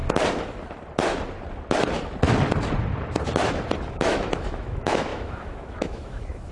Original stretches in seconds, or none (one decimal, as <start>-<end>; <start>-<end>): 0.0-3.9